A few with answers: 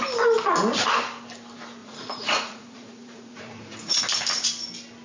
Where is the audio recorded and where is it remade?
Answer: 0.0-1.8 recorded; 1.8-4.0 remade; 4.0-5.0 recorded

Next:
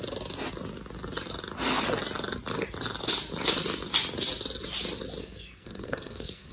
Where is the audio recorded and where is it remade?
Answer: 0.0-5.2 recorded; 5.2-6.5 remade

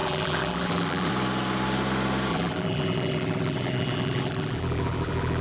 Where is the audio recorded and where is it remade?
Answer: 0.0-1.1 remade; 1.1-2.3 recorded; 2.3-5.4 remade

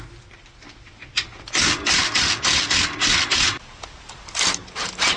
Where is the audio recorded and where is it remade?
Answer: 0.0-5.2 recorded

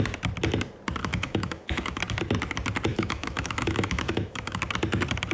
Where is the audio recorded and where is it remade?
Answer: 0.0-1.0 recorded; 1.0-2.0 remade; 2.0-2.9 recorded; 2.9-4.6 remade; 4.6-5.3 recorded